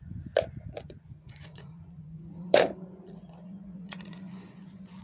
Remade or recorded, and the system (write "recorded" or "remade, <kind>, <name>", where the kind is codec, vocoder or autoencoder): remade, vocoder, Vocos